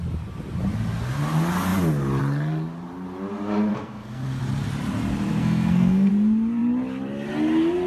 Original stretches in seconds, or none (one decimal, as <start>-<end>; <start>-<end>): 0.0-3.7; 4.4-5.3; 6.1-7.9